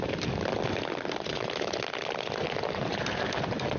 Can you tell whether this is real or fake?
real